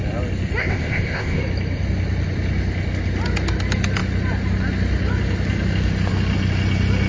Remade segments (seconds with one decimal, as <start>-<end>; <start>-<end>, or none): 0.6-1.4